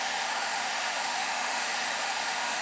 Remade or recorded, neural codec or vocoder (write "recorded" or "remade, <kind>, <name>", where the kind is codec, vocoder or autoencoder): remade, autoencoder, DAC-VAE